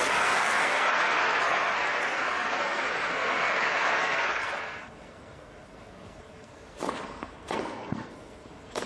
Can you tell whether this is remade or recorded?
remade